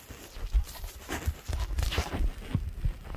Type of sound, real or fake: real